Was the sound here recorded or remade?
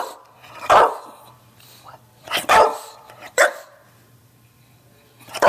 remade